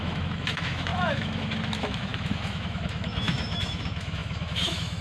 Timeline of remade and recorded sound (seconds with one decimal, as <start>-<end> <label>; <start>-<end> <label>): 0.0-5.0 remade